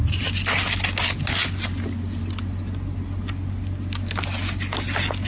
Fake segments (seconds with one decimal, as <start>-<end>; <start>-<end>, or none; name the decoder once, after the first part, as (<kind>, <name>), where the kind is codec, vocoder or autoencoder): none